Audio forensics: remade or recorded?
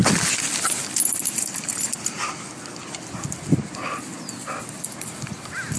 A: recorded